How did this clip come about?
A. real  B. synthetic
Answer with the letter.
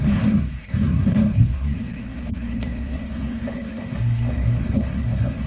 B